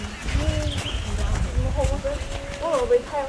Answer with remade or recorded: recorded